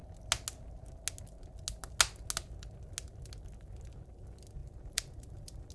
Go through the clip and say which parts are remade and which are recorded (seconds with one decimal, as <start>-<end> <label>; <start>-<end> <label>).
0.0-4.6 recorded; 4.6-5.7 remade